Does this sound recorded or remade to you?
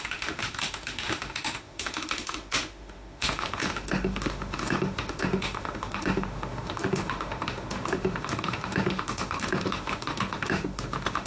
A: remade